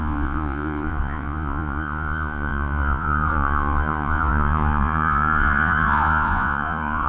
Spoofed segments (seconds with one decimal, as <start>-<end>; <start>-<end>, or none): 0.0-7.1